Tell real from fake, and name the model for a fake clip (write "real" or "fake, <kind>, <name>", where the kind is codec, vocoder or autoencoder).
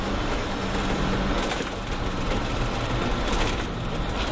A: real